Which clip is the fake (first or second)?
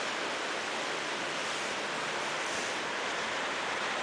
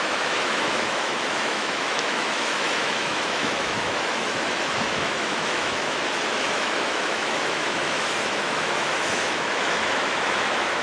second